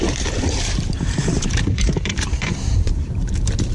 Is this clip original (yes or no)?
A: no